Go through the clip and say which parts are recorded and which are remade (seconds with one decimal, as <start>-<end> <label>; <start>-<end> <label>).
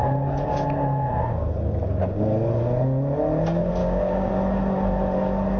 0.0-3.8 recorded; 3.8-4.3 remade; 4.3-5.6 recorded